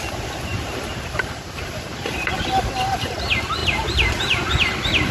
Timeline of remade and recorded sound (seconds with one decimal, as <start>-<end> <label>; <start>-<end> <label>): 0.0-0.5 recorded; 0.5-2.1 remade; 2.1-3.6 recorded; 3.6-4.5 remade; 4.5-5.1 recorded

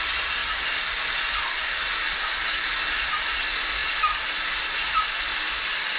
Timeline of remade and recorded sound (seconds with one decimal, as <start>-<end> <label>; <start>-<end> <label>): 0.0-6.0 recorded

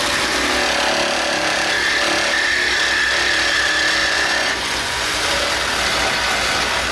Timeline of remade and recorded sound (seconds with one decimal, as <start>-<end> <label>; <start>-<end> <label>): 0.0-4.0 recorded; 4.0-5.2 remade; 5.2-6.9 recorded

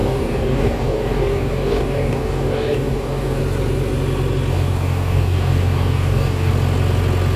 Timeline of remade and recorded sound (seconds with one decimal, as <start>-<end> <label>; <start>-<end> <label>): 0.0-3.4 remade; 3.4-4.5 recorded; 4.5-6.5 remade; 6.5-7.4 recorded

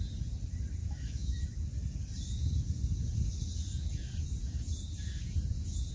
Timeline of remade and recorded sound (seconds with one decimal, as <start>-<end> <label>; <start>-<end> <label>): 0.0-0.8 recorded; 0.8-1.4 remade; 1.4-5.9 recorded

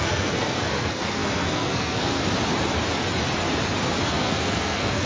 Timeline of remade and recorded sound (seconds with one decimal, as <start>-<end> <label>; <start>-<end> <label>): 0.0-2.2 remade; 2.2-4.0 recorded; 4.0-5.1 remade